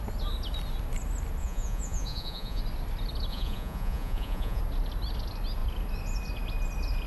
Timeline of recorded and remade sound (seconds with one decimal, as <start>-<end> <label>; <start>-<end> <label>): 0.0-1.4 recorded; 1.4-2.6 remade; 2.6-3.3 recorded; 3.3-4.6 remade; 4.6-7.1 recorded

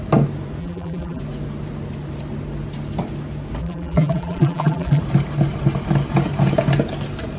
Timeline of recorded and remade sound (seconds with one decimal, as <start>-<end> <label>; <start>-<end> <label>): 0.0-0.6 recorded; 0.6-1.2 remade; 1.2-3.6 recorded; 3.6-5.0 remade; 5.0-7.4 recorded